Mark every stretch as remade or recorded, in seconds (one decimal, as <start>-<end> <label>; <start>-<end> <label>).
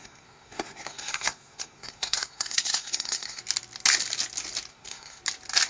0.0-3.4 remade; 3.4-4.7 recorded; 4.7-5.2 remade; 5.2-5.7 recorded